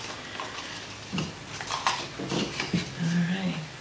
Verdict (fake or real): real